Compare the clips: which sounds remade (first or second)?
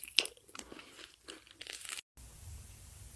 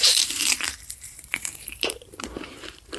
second